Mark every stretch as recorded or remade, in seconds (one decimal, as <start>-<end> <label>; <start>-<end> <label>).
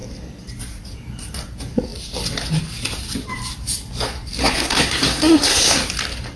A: 0.0-4.4 recorded; 4.4-5.8 remade; 5.8-6.4 recorded